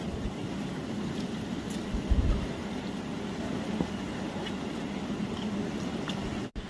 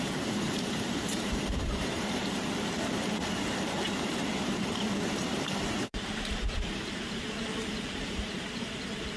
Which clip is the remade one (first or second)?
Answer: second